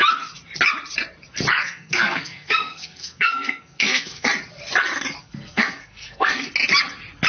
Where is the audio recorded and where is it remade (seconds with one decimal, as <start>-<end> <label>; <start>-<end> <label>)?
0.0-1.5 recorded; 1.5-4.3 remade; 4.3-5.2 recorded; 5.2-6.5 remade; 6.5-7.3 recorded